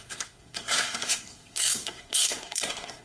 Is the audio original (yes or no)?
no